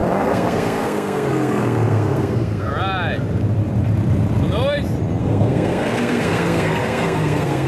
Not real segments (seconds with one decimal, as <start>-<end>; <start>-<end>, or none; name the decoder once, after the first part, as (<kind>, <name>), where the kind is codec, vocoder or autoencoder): 0.0-2.7 (codec, SNAC); 5.2-7.7